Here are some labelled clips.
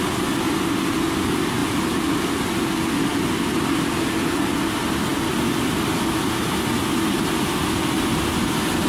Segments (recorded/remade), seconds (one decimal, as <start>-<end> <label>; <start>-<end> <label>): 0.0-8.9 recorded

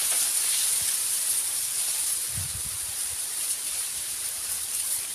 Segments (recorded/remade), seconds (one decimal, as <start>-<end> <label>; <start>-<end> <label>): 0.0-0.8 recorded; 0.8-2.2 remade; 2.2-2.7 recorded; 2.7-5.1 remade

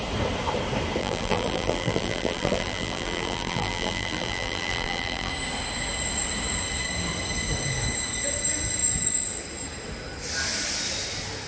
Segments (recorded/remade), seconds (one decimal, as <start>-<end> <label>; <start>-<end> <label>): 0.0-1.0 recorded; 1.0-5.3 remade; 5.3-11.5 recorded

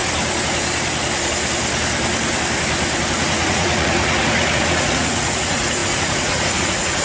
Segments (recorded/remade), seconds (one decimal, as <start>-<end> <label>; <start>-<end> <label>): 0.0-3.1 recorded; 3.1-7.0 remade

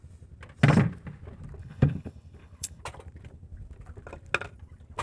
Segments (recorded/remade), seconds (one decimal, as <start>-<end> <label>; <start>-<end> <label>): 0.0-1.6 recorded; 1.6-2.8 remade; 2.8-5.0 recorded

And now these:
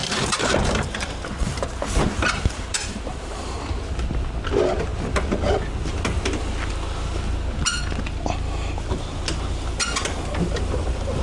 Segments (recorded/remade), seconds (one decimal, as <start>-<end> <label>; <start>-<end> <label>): 0.0-3.8 remade; 3.8-11.2 recorded

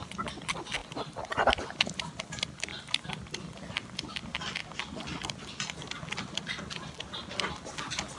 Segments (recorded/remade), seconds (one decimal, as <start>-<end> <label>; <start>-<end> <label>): 0.0-8.2 recorded